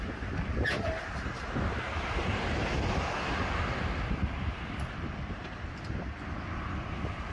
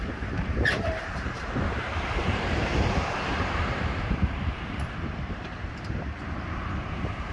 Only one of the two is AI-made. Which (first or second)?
second